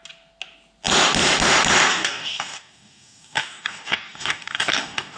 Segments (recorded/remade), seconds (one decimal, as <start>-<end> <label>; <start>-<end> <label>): 0.0-1.9 recorded; 1.9-5.2 remade